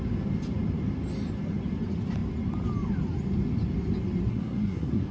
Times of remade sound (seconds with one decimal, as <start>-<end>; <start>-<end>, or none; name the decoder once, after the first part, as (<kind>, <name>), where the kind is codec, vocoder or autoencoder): 4.3-5.1 (codec, SNAC)